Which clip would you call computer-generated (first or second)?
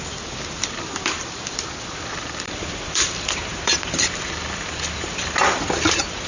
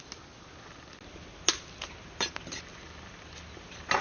first